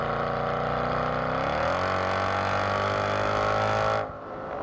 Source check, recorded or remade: recorded